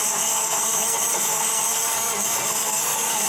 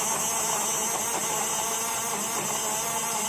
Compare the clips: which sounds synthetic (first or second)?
first